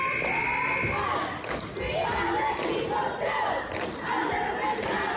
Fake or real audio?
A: real